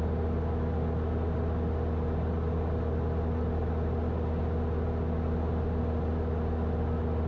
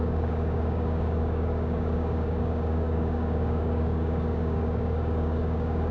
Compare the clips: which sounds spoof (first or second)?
second